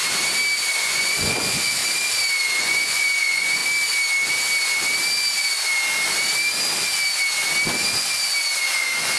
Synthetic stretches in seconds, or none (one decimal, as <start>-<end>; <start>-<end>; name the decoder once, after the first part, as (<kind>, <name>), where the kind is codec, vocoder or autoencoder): 0.8-1.8 (vocoder, Vocos); 2.6-3.6; 8.6-9.2